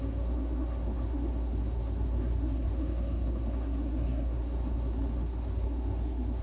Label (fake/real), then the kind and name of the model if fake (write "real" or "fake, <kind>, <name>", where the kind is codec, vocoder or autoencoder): fake, codec, SNAC